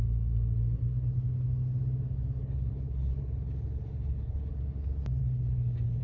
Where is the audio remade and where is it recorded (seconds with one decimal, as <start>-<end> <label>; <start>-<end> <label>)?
0.0-2.4 recorded; 2.4-4.5 remade; 4.5-5.2 recorded; 5.2-6.0 remade